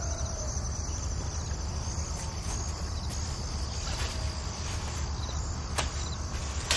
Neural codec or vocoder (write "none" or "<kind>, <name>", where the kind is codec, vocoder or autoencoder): none